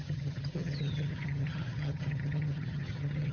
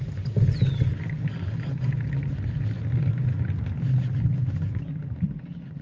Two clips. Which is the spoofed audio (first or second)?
first